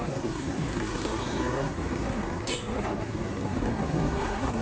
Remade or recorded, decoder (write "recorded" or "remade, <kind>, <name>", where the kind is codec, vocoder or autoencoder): remade, codec, SNAC